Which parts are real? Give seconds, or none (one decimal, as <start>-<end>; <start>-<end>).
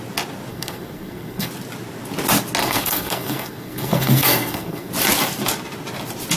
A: 0.0-0.5; 1.5-2.6; 4.9-6.4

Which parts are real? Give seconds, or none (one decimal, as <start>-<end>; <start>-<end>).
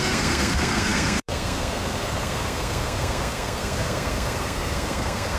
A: none